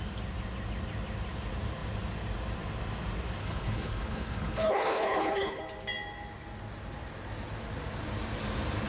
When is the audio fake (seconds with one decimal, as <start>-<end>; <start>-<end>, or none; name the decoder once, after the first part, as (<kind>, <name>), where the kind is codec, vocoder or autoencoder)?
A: 3.4-5.6 (codec, HILCodec)